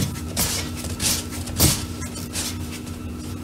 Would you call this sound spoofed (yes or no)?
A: no